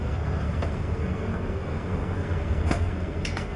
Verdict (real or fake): fake